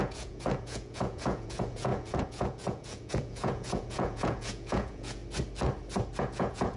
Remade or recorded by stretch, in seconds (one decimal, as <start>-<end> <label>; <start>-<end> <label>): 0.0-5.2 remade; 5.2-6.2 recorded; 6.2-6.8 remade